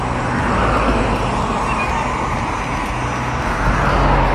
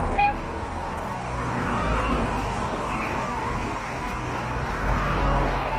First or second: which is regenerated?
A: second